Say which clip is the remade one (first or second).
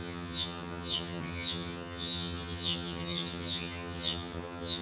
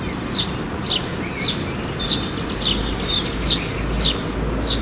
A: first